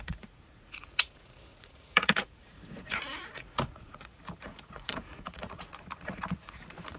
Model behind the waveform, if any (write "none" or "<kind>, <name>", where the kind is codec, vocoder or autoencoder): vocoder, Vocos